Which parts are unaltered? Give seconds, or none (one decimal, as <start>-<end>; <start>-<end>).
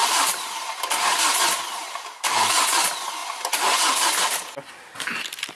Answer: 0.7-1.4; 2.6-5.6